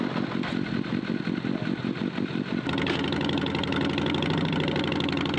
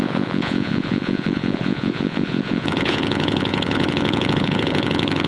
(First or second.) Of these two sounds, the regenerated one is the second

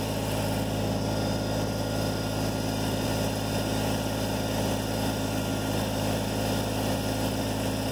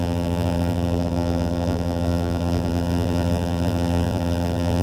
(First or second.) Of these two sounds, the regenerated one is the second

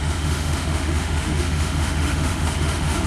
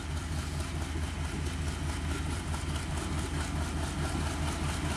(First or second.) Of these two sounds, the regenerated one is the first